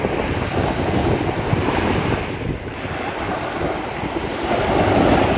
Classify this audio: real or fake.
real